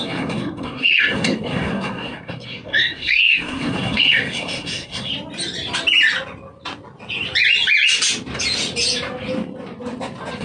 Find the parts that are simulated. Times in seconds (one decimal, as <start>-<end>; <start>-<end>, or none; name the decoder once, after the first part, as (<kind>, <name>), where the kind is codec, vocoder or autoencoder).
0.0-5.1 (codec, SNAC)